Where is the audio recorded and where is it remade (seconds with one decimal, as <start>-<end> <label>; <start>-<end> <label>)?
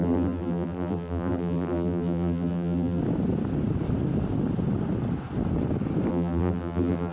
0.0-3.0 remade; 3.0-6.1 recorded; 6.1-7.1 remade